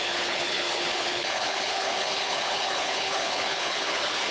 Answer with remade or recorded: remade